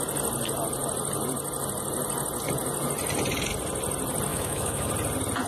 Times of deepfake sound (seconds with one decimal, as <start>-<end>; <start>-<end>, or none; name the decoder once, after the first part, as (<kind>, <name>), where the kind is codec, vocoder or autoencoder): 4.3-4.9 (autoencoder, DAC-VAE)